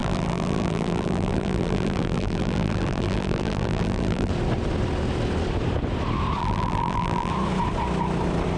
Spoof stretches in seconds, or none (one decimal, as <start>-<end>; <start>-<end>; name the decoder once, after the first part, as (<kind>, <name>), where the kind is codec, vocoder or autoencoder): 0.0-4.3 (vocoder, BigVGAN v2); 6.4-7.3